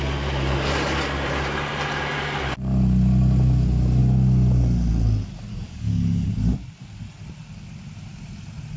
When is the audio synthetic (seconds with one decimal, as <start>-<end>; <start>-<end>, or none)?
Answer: 5.5-6.3